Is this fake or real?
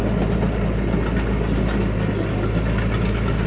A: real